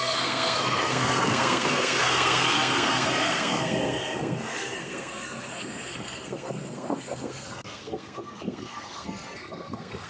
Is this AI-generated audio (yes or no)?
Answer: yes